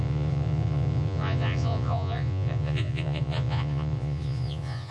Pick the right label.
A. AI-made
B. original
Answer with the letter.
A